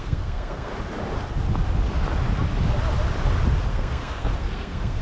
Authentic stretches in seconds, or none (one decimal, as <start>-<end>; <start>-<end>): 0.7-3.7